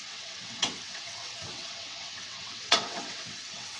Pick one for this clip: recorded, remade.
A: remade